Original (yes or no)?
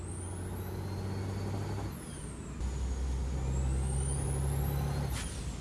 yes